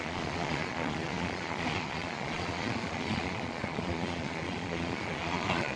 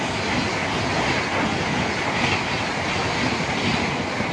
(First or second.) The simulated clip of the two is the first